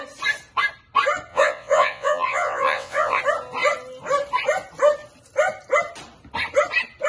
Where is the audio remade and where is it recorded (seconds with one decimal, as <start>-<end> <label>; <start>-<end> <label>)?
0.0-1.3 recorded; 1.3-3.2 remade; 3.2-7.1 recorded